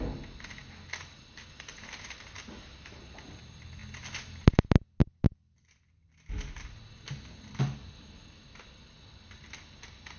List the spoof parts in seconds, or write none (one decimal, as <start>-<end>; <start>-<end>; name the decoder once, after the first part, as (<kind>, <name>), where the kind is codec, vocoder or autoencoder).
none